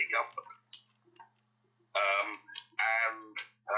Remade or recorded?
recorded